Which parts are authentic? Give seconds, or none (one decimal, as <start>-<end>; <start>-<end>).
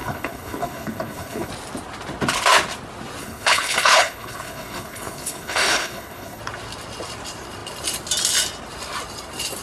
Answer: 1.5-3.2; 6.4-9.6